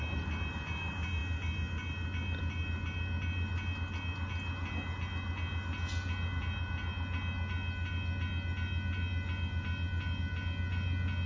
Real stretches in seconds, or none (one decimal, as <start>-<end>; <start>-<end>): 0.0-11.3